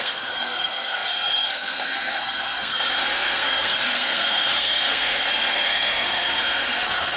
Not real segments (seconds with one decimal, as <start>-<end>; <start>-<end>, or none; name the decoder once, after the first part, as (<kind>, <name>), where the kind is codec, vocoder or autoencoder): 0.0-7.2 (codec, SNAC)